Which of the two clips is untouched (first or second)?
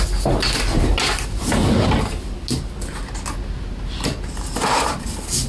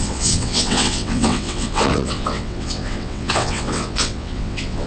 first